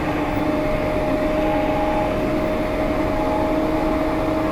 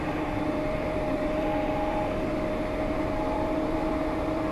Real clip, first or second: first